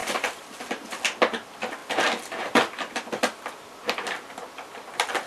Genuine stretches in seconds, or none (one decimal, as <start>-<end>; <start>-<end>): 1.0-1.8